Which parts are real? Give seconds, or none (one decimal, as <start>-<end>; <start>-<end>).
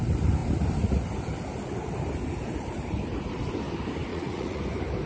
0.0-4.1; 4.6-5.1